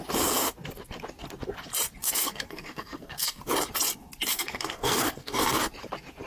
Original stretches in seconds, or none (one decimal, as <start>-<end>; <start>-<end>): 0.0-2.0; 3.4-4.3; 5.6-6.3